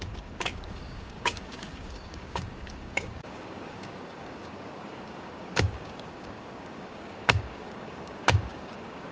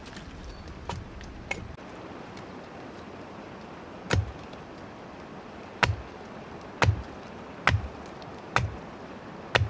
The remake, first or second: first